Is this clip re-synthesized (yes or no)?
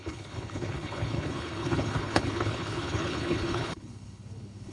yes